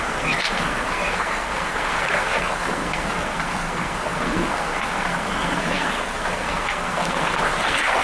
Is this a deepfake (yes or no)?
yes